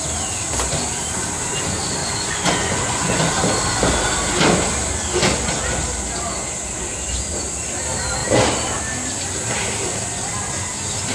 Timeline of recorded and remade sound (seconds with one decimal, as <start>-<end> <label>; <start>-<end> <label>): 0.0-2.0 recorded; 2.0-3.3 remade; 3.3-11.1 recorded